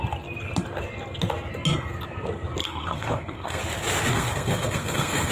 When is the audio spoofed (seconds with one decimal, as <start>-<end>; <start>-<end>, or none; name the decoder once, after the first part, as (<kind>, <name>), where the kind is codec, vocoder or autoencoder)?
2.6-3.6 (codec, SNAC); 4.1-5.3